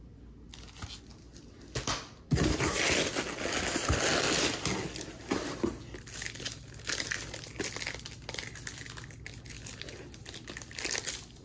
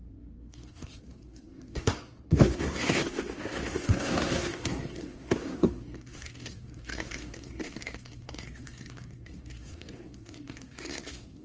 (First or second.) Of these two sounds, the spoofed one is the second